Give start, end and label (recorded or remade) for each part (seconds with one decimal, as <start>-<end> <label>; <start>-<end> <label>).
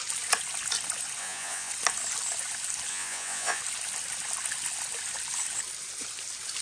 0.0-1.2 recorded; 1.2-1.7 remade; 1.7-2.9 recorded; 2.9-3.6 remade; 3.6-6.6 recorded